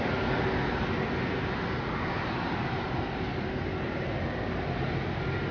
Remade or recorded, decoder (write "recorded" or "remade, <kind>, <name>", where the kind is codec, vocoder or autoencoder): recorded